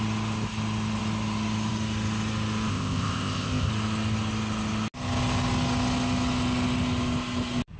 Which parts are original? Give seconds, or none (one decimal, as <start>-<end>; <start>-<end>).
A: 0.0-2.7; 3.7-7.8